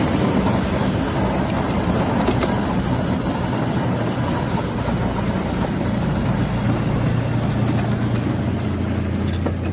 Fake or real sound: real